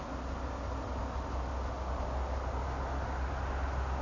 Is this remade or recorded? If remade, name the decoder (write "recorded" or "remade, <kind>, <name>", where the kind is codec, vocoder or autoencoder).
recorded